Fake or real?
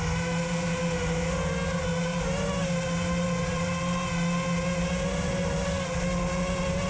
real